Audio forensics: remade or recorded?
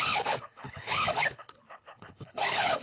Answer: remade